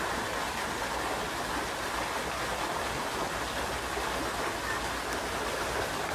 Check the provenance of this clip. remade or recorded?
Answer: recorded